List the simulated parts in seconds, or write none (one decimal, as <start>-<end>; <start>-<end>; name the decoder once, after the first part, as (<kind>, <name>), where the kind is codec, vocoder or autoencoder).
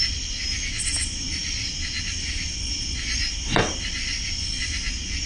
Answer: none